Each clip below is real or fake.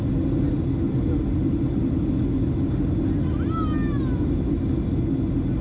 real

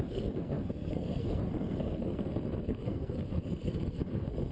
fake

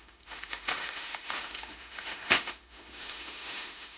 fake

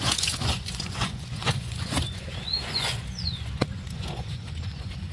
fake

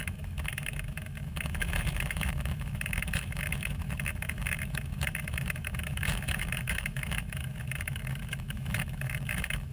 fake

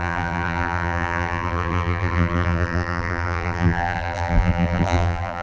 fake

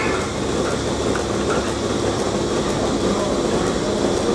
real